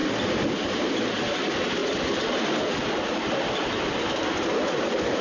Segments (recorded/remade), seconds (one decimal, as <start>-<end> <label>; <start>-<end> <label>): 0.0-5.2 recorded